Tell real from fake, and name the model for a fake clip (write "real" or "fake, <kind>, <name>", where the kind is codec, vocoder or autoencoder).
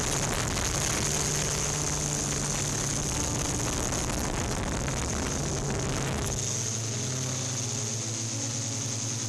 real